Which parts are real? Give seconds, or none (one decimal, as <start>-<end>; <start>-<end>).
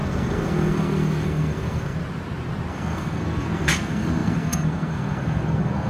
2.0-2.7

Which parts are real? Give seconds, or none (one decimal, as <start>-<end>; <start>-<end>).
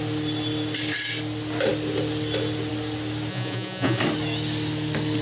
0.0-3.3; 4.0-5.2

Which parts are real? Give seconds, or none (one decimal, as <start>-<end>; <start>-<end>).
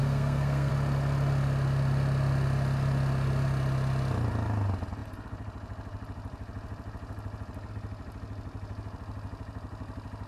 0.7-10.3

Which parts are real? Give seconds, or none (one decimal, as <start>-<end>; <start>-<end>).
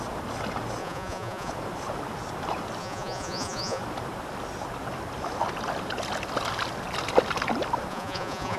0.0-0.8; 1.5-2.8; 3.8-7.9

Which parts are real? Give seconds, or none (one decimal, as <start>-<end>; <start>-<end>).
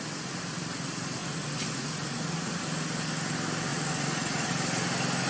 0.0-1.2; 2.6-3.7; 4.5-5.3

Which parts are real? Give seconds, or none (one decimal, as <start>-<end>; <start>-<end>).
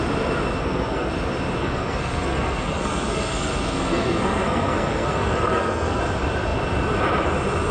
0.0-0.6; 1.1-1.6; 6.0-7.7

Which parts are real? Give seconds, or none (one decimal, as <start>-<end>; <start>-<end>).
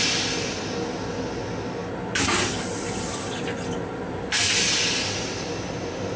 0.0-6.2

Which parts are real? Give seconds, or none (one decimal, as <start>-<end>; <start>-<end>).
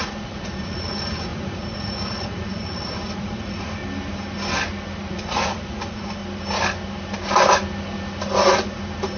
3.8-5.1; 6.2-9.2